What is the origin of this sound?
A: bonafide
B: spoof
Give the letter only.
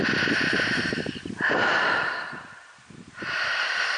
A